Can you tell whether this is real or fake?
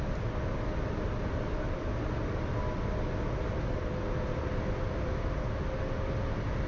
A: real